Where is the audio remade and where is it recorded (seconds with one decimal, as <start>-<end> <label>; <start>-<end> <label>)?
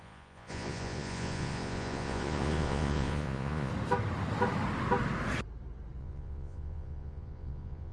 0.0-3.7 remade; 3.7-6.0 recorded; 6.0-7.9 remade